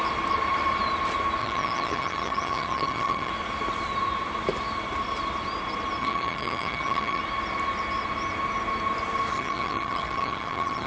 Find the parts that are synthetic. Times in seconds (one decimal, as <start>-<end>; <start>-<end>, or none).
1.4-3.3; 6.0-7.2; 9.3-10.9